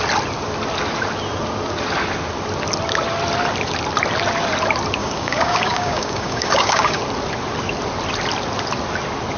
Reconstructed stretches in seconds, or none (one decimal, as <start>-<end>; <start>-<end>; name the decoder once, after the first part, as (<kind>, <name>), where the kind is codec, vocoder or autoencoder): 5.0-7.0 (codec, DAC)